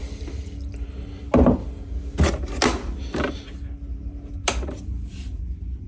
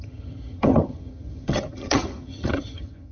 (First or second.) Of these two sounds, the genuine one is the first